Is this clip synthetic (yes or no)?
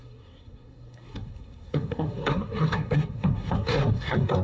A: yes